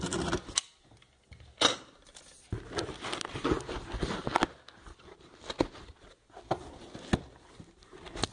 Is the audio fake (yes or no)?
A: no